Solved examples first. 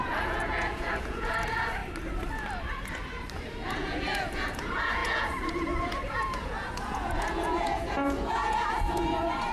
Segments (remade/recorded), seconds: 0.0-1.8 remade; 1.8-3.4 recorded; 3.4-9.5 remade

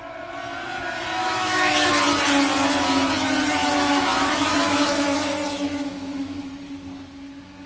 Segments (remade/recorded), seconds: 0.0-1.2 recorded; 1.2-1.9 remade; 1.9-3.6 recorded; 3.6-6.4 remade; 6.4-7.7 recorded

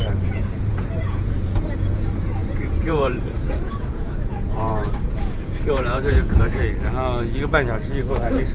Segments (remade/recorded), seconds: 0.0-6.6 remade; 6.6-8.0 recorded; 8.0-8.5 remade

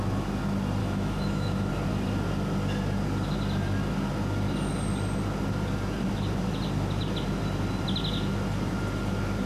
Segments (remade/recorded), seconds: 0.0-0.8 recorded; 0.8-1.7 remade; 1.7-9.5 recorded

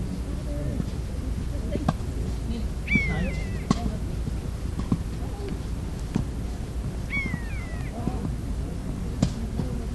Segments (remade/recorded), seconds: 0.0-9.9 recorded

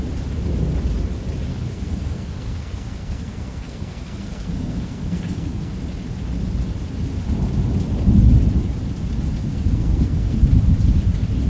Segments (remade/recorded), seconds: 0.0-1.5 recorded; 1.5-5.7 remade; 5.7-9.5 recorded; 9.5-10.4 remade; 10.4-11.5 recorded

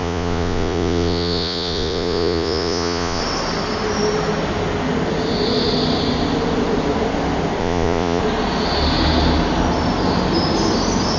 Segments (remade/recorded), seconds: 0.0-3.2 remade; 3.2-7.6 recorded; 7.6-8.2 remade; 8.2-11.2 recorded